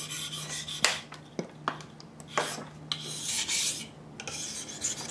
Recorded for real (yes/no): yes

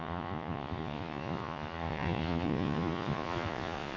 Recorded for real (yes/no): no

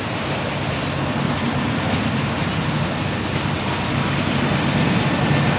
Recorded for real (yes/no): yes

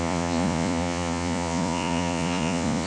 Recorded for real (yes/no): no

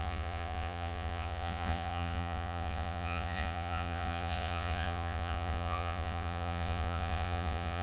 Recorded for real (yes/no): no